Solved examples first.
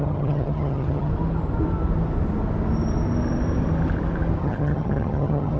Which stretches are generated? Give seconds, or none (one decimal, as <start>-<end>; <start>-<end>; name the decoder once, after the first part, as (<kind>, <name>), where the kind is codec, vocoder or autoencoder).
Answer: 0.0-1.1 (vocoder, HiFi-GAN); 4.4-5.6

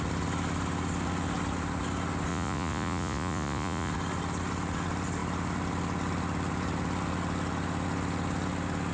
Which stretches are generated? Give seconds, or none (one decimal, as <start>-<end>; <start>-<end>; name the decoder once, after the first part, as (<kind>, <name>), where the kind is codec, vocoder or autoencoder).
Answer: 2.3-3.9 (vocoder, Vocos)

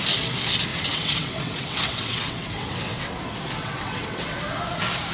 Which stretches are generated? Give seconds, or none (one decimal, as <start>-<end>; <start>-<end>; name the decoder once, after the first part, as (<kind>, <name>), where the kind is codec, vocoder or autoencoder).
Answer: 0.7-3.1 (vocoder, WaveNeXt); 3.6-4.4

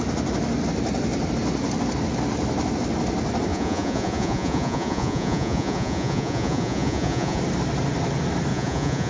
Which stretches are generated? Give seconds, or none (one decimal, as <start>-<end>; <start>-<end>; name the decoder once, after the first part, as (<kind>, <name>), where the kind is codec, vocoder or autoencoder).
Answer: 3.5-7.4 (vocoder, Vocos); 8.5-9.1

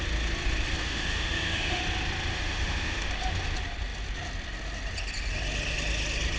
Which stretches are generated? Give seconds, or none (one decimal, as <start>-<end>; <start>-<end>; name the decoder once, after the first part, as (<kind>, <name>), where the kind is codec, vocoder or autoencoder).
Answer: 0.8-1.8 (autoencoder, DAC-VAE); 2.3-3.1

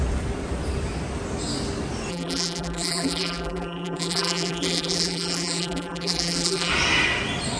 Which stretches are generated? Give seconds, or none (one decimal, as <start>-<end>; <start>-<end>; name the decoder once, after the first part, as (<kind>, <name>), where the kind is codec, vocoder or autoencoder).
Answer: 2.1-6.7 (vocoder, BigVGAN v2)

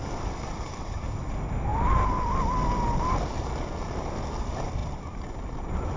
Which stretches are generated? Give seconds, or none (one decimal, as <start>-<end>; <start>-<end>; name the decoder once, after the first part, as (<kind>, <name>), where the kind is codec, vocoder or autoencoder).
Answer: none